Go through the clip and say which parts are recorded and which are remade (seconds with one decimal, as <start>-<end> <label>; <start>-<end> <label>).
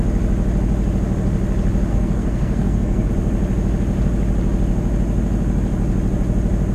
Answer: 0.0-1.9 recorded; 1.9-3.1 remade; 3.1-6.7 recorded